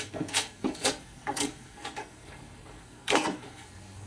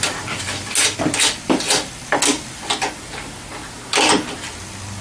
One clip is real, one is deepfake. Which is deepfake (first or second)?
first